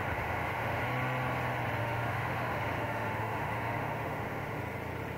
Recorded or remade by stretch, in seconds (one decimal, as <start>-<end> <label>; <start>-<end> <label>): 0.0-0.8 remade; 0.8-1.8 recorded; 1.8-4.6 remade; 4.6-5.2 recorded